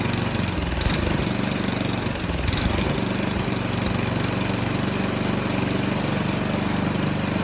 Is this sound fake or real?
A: real